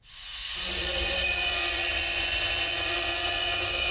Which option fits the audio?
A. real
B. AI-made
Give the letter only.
B